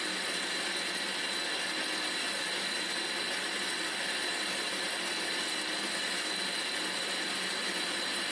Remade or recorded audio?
recorded